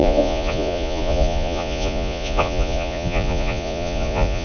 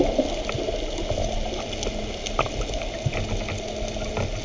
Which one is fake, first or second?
first